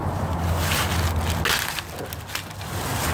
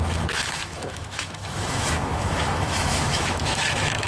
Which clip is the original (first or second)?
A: first